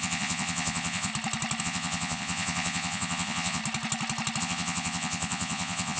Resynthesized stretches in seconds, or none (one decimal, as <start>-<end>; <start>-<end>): 0.0-1.1; 1.6-3.6; 4.4-6.0